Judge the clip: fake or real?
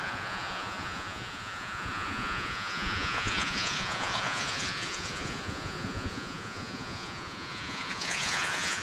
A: fake